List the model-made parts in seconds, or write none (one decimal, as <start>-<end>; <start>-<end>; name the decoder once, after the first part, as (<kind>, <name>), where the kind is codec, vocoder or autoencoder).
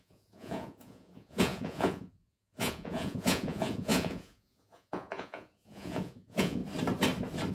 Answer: 0.0-6.6 (vocoder, Vocos)